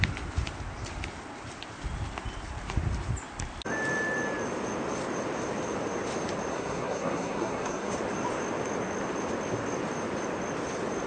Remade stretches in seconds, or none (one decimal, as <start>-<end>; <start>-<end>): 6.5-7.9